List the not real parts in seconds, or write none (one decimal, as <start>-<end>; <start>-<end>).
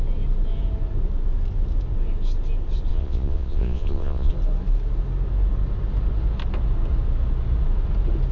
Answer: 2.9-4.3